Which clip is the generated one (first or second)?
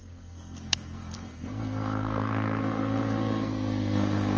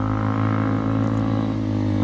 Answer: first